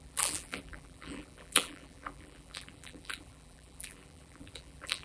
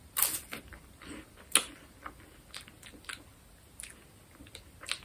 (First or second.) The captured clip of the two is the second